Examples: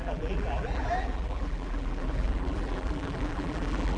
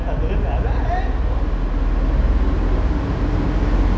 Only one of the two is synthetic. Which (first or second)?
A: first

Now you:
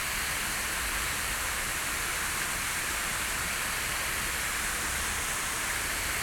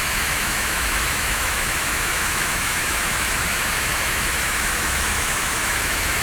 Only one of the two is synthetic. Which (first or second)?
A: second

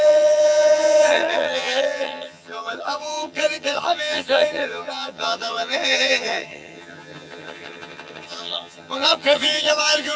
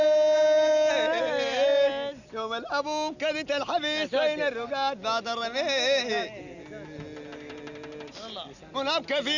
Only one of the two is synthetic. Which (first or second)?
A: first